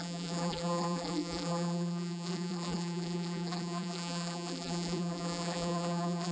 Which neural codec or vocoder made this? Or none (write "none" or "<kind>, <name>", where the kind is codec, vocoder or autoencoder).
vocoder, BigVGAN v2